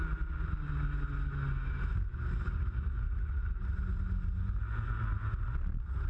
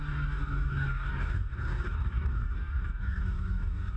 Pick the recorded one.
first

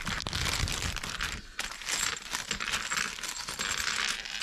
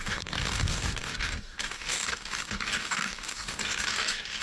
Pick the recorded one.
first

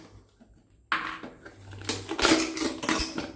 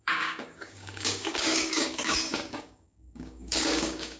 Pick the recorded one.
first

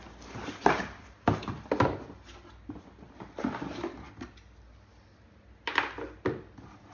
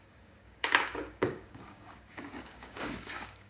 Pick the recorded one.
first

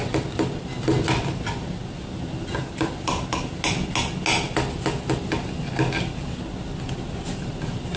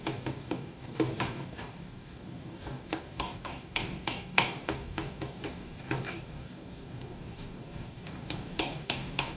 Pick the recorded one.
first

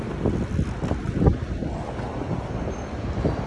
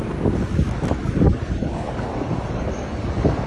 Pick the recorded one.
first